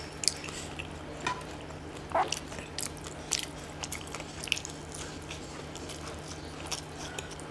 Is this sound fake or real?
real